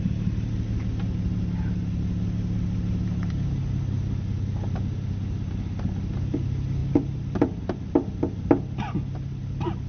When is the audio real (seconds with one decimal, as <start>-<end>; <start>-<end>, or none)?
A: 0.0-6.8; 8.6-9.9